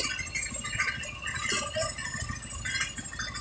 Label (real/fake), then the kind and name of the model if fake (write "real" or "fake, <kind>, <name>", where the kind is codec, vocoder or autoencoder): real